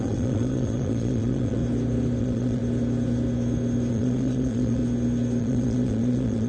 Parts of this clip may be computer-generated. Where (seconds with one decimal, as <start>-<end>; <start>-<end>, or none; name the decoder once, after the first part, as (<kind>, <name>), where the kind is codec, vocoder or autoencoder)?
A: 0.0-1.6 (vocoder, Vocos); 2.2-2.6; 3.9-4.8; 5.4-6.5